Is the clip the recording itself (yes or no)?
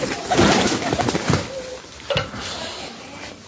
no